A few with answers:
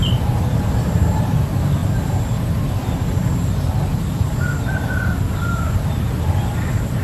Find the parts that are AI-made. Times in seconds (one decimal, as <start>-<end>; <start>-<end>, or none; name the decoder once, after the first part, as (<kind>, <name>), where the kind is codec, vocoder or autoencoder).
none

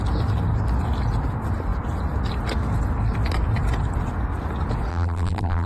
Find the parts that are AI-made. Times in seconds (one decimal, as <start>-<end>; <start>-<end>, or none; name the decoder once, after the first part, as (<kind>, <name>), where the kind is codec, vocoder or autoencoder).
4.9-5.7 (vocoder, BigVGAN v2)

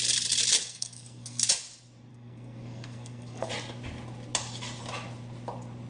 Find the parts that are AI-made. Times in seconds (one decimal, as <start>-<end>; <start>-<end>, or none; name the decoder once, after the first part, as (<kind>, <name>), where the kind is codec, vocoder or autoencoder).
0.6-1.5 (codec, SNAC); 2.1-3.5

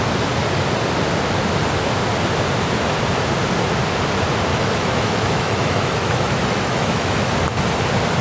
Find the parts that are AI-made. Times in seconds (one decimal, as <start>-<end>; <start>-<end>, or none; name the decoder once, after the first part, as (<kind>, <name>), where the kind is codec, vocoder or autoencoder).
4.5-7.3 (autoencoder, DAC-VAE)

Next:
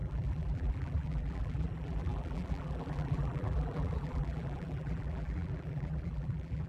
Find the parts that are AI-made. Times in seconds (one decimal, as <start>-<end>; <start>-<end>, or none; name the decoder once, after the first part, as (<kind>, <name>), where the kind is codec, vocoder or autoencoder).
0.0-6.7 (vocoder, BigVGAN v2)

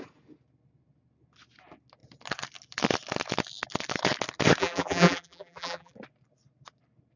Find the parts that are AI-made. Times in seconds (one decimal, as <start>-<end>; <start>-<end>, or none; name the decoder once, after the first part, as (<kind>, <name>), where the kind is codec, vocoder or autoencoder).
4.6-5.9 (vocoder, BigVGAN v2)

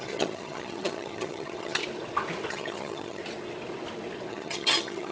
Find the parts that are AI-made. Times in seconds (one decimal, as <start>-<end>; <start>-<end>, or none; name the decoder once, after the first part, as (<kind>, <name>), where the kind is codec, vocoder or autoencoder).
0.0-1.8 (vocoder, HiFi-GAN); 2.5-3.2; 4.3-5.1